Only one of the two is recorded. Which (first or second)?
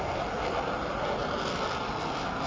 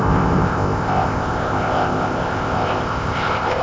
first